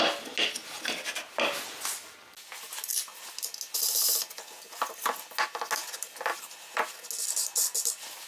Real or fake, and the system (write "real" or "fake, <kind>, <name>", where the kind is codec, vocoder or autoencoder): real